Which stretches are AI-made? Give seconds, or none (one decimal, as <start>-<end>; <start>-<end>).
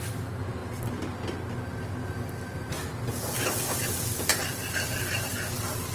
4.3-5.4